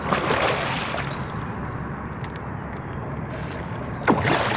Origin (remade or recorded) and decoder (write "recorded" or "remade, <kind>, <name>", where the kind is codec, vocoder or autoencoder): recorded